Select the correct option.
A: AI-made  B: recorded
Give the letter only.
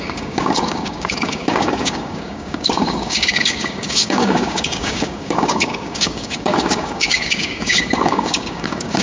A